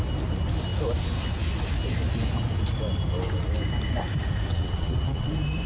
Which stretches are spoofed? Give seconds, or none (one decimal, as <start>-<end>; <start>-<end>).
4.5-5.3